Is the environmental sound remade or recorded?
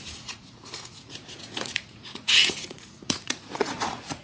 remade